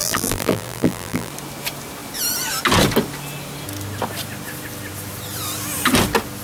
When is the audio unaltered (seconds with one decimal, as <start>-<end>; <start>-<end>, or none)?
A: 1.3-6.4